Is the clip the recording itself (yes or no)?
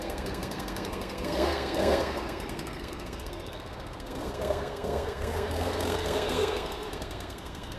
no